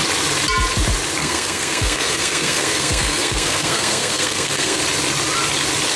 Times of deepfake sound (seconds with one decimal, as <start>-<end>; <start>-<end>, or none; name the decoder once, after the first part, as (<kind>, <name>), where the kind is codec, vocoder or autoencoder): 1.2-4.8 (codec, SNAC)